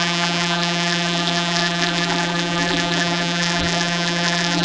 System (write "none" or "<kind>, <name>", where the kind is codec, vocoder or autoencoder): vocoder, BigVGAN v2